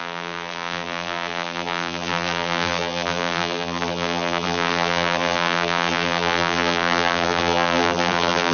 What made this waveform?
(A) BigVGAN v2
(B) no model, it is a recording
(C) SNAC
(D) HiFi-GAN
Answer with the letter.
A